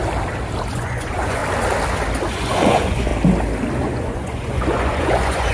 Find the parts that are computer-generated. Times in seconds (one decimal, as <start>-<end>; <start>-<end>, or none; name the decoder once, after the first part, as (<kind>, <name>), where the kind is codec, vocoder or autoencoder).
0.7-1.4 (vocoder, Vocos); 2.3-3.1; 3.8-5.5